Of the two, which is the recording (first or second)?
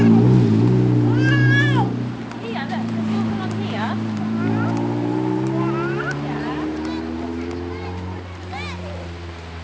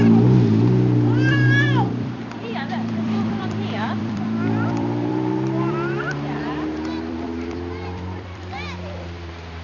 first